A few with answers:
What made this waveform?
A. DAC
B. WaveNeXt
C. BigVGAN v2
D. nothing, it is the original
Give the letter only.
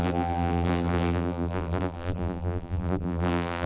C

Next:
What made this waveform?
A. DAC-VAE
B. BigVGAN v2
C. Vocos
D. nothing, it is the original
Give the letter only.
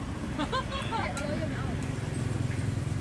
D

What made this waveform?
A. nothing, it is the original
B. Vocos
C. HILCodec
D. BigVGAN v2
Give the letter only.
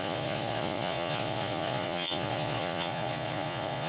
B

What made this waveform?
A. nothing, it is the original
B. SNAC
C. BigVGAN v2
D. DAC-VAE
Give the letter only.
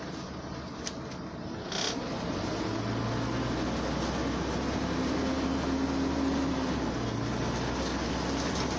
A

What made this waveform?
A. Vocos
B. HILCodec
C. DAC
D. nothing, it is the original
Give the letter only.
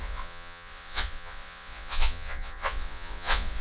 A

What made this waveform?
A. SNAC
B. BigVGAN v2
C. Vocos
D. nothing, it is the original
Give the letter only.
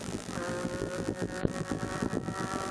B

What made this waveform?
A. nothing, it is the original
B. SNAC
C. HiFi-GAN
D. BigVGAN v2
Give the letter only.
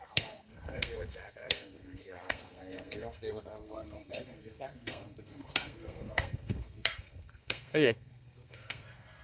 B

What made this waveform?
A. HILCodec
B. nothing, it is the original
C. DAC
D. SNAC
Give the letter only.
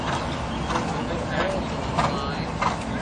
B